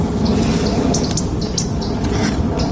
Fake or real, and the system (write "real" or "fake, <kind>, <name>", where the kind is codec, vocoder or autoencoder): real